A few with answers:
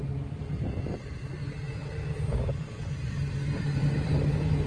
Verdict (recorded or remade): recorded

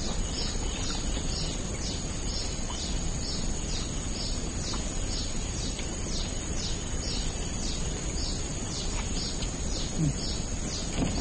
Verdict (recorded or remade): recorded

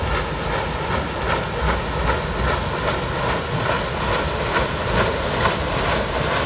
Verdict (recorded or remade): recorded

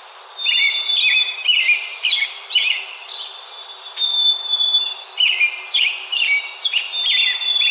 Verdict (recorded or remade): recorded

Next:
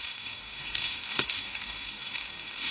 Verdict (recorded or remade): remade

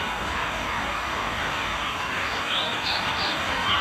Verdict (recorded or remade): remade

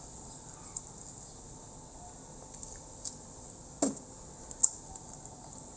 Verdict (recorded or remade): recorded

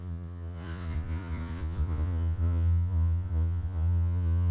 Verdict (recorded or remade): remade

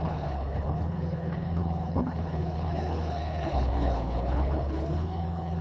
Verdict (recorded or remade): remade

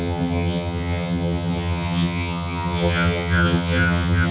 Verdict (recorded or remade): remade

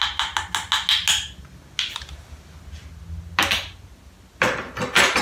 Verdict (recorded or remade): recorded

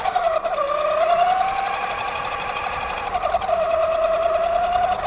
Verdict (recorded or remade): recorded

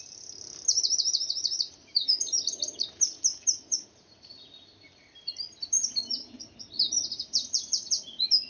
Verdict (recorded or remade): recorded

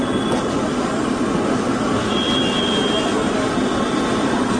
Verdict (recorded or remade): recorded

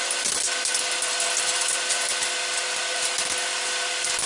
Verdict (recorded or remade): recorded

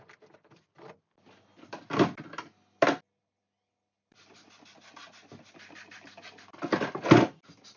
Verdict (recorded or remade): recorded